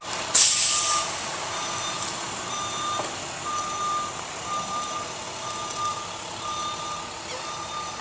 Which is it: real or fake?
real